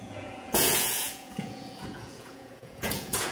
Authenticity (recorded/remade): remade